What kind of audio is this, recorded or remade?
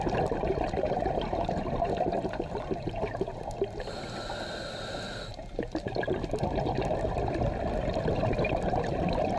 recorded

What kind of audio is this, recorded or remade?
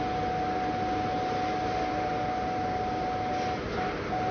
recorded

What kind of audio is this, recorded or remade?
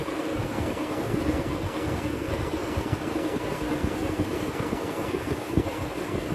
remade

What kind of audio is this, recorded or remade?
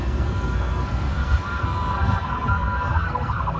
remade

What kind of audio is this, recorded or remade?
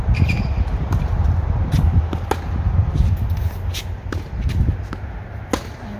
recorded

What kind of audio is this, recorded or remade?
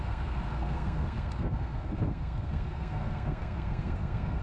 remade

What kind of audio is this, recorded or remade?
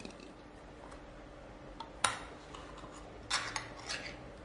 recorded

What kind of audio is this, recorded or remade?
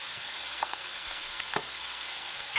remade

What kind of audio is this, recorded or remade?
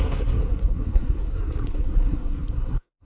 remade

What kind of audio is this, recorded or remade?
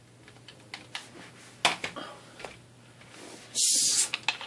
recorded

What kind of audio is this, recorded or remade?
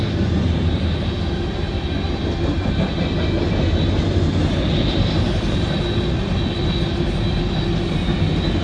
recorded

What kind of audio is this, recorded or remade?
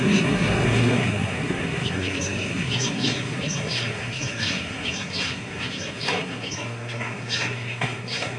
remade